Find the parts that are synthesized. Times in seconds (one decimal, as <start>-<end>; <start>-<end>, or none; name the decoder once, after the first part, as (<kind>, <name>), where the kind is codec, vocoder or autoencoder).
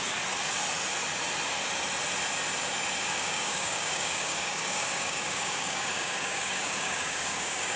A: 3.0-7.8 (codec, DAC)